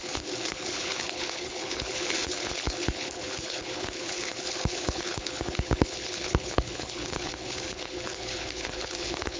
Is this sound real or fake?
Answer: fake